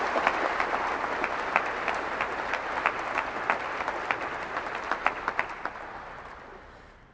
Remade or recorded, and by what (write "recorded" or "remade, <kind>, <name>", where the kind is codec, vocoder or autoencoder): recorded